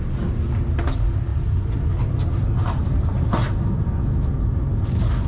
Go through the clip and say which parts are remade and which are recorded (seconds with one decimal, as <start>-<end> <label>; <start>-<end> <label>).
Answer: 0.0-1.3 recorded; 1.3-3.8 remade; 3.8-5.3 recorded